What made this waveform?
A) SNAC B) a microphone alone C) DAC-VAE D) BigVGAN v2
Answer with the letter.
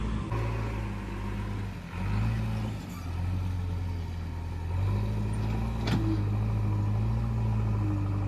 B